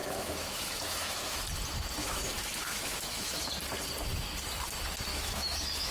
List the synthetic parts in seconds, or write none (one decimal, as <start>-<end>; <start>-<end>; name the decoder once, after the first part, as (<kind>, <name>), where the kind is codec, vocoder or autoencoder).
0.0-1.4 (autoencoder, DAC-VAE); 2.0-3.5; 5.1-5.9